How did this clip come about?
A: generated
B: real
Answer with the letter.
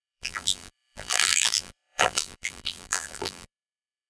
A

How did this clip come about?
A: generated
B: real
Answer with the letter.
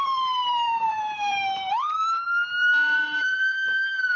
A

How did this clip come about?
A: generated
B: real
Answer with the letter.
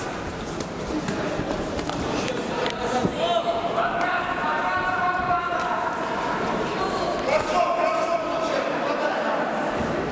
A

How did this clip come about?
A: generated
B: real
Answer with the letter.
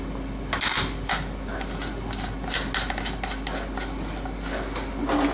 B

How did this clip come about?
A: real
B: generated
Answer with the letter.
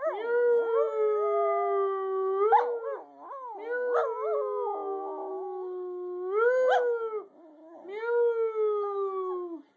A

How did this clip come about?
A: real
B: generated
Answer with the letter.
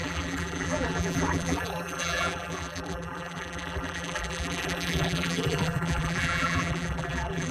B